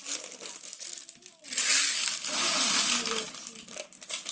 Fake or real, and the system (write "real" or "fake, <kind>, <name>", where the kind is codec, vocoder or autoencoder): real